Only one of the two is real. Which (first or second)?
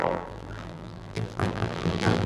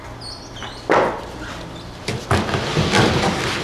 second